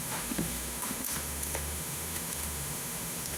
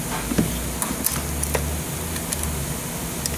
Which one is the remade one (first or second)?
first